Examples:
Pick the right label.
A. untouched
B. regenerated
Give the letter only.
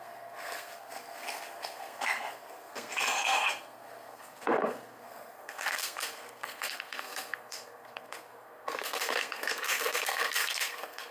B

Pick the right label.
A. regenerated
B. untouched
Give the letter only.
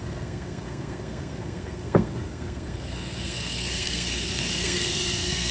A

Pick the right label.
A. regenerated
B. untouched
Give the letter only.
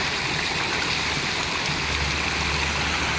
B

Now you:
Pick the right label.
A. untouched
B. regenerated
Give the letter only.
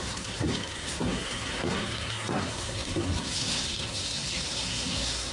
B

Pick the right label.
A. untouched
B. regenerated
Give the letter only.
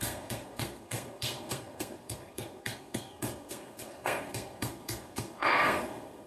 B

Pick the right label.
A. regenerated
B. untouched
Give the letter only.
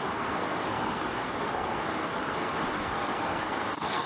A